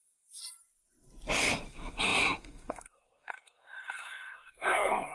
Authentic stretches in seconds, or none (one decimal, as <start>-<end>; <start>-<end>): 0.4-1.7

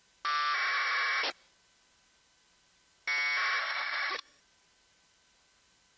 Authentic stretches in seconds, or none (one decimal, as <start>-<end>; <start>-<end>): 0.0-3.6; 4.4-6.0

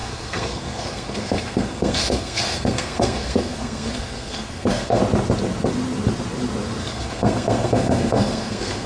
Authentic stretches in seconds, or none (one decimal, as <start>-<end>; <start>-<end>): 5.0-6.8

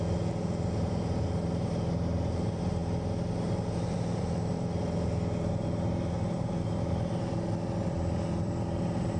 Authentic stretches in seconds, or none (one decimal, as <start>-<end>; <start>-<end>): 0.0-9.2

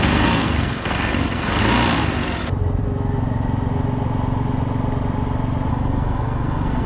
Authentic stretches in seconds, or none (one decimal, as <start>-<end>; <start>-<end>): 1.6-5.7